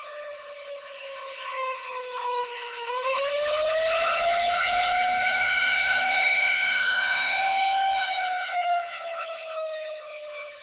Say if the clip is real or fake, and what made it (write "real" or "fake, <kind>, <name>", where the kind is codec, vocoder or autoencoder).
fake, codec, HILCodec